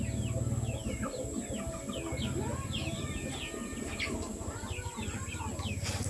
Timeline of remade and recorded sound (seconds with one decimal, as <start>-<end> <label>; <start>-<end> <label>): 0.0-2.5 recorded; 2.5-5.4 remade; 5.4-6.1 recorded